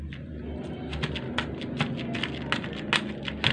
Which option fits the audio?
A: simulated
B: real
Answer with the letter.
B